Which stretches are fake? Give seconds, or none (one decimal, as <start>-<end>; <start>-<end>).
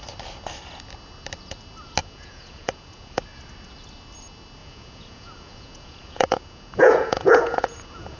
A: 2.0-3.2; 4.6-8.2